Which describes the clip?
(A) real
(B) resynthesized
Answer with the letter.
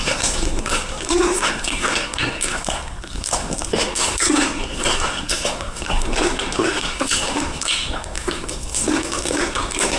B